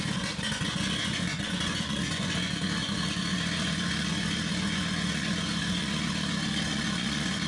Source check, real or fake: fake